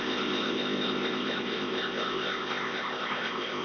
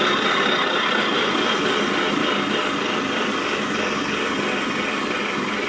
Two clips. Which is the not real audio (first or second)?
first